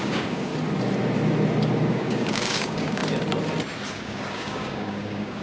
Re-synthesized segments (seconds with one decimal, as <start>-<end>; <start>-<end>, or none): 0.0-0.5; 1.9-3.0; 3.9-5.4